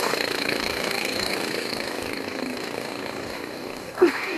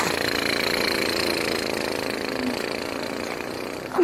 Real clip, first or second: second